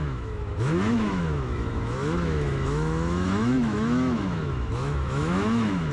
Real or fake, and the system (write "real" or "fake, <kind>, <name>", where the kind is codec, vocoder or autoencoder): fake, autoencoder, DAC-VAE